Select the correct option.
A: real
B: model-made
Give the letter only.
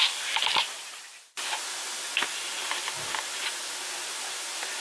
A